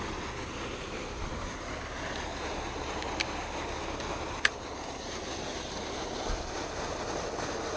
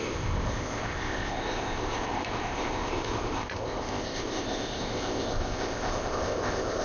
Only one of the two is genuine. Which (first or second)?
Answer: first